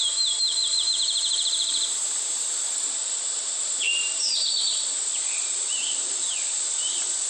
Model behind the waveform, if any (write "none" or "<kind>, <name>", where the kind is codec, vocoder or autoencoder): vocoder, BigVGAN v2